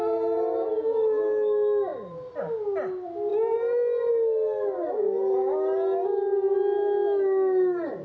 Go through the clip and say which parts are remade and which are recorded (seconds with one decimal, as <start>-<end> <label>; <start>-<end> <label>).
0.0-8.0 recorded